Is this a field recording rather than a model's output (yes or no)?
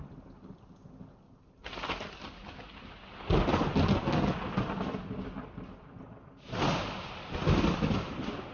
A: yes